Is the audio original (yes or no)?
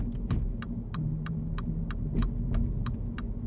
yes